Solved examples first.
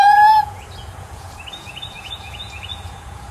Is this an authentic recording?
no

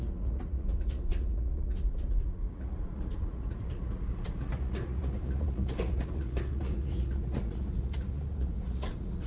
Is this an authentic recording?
no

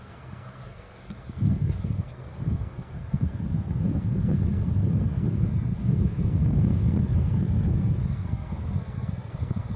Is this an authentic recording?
no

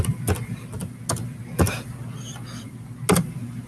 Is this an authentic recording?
yes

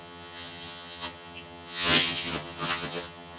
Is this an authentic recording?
no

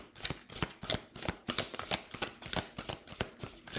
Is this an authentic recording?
no